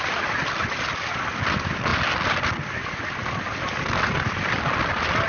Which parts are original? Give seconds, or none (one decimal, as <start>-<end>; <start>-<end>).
0.0-5.3